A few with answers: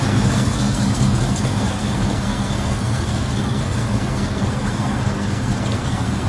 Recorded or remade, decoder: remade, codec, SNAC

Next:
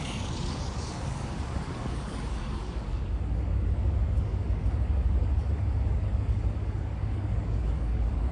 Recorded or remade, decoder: remade, codec, DAC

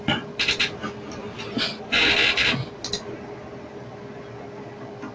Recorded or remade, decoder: recorded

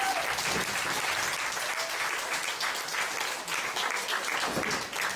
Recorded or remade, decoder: recorded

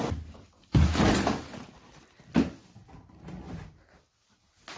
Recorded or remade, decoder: recorded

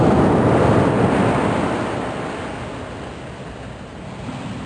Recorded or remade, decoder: recorded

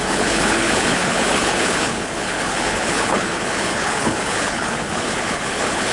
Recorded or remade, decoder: remade, codec, HILCodec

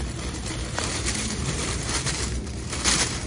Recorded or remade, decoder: remade, vocoder, BigVGAN v2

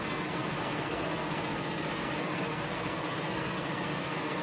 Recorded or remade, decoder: remade, codec, SNAC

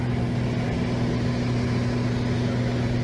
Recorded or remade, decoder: recorded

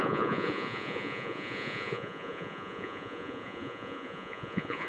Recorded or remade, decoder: remade, vocoder, Vocos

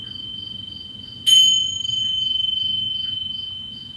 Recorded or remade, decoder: recorded